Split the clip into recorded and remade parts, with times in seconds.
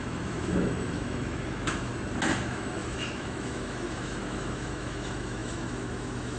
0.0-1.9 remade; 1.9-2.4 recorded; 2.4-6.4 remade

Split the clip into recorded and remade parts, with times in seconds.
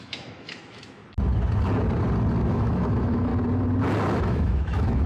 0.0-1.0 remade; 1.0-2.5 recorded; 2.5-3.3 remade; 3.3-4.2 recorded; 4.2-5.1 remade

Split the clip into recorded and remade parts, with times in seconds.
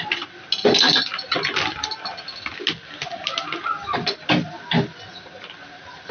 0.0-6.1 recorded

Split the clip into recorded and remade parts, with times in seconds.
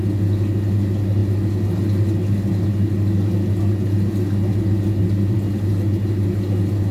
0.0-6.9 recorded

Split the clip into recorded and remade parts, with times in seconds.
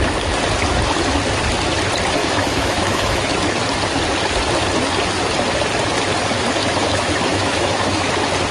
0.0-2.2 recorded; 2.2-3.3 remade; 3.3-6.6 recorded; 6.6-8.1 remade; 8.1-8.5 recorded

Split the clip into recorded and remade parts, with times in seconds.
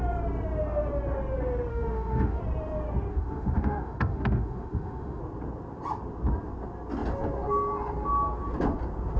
0.0-1.7 recorded; 1.7-2.4 remade; 2.4-3.1 recorded; 3.1-5.2 remade; 5.2-9.2 recorded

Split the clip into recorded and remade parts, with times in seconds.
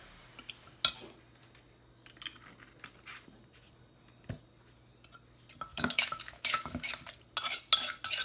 0.0-5.7 recorded; 5.7-6.9 remade; 6.9-8.2 recorded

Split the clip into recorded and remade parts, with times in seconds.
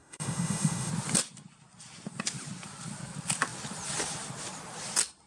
0.0-0.9 remade; 0.9-5.3 recorded